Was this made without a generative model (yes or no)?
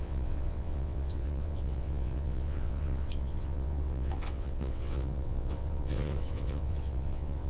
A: no